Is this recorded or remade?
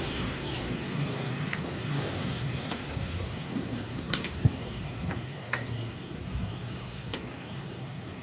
remade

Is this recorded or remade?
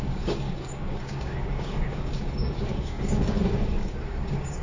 remade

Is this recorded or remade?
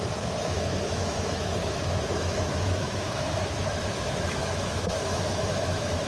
remade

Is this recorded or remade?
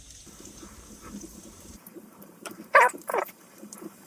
remade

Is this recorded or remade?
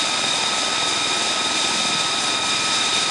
remade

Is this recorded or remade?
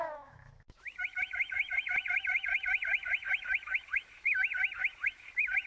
remade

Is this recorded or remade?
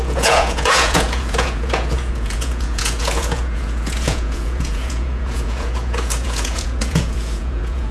remade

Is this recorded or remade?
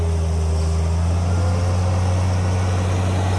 recorded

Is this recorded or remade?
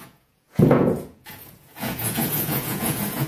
remade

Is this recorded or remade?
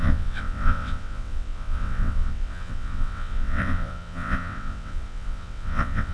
remade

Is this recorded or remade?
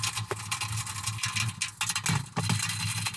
recorded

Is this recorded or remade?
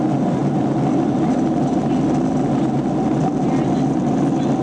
recorded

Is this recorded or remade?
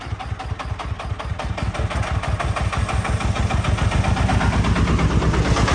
recorded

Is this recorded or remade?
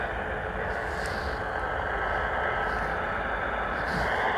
recorded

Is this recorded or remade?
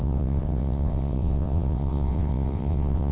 remade